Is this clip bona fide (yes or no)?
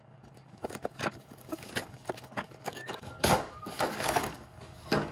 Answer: no